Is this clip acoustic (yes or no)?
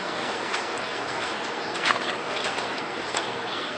no